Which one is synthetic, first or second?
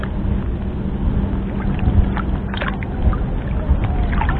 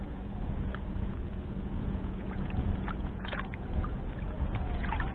second